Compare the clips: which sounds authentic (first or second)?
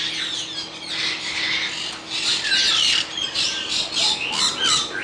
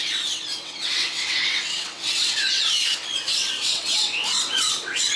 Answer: first